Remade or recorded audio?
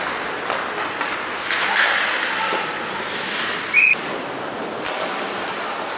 recorded